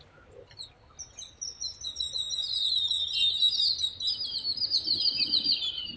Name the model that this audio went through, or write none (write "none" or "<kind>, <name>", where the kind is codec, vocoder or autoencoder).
none